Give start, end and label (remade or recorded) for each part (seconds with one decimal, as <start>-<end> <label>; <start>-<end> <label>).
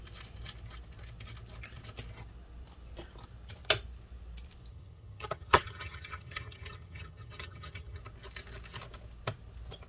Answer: 0.0-4.7 recorded; 4.7-8.0 remade; 8.0-9.9 recorded